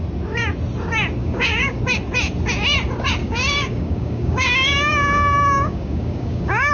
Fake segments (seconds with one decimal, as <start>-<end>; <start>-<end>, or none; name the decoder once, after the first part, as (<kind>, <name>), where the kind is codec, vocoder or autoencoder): 1.2-1.8 (codec, DAC); 3.2-6.7